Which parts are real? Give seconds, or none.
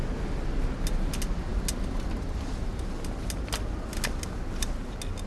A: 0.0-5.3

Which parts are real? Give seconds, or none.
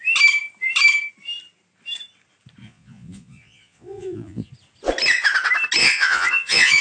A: 0.0-2.6; 4.5-5.8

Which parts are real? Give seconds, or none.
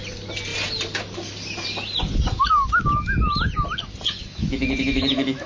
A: 0.0-4.2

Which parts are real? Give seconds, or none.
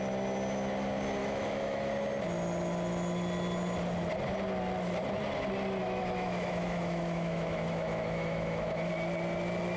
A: 0.0-1.2; 1.9-5.8; 8.9-9.8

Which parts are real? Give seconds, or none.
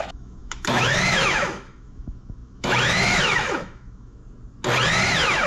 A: 4.2-5.1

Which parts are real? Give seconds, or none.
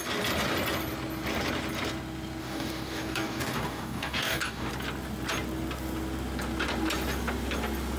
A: 0.0-2.4; 4.7-8.0